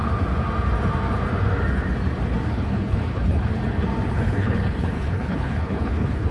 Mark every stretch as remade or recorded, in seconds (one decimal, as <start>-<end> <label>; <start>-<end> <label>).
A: 0.0-2.5 recorded; 2.5-3.5 remade; 3.5-4.1 recorded; 4.1-6.3 remade